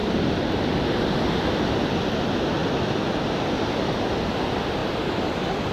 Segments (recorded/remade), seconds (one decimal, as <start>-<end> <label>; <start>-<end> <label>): 0.0-1.4 remade; 1.4-2.6 recorded; 2.6-3.3 remade; 3.3-4.8 recorded; 4.8-5.7 remade